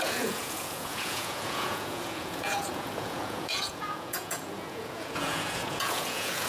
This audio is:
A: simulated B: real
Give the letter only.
A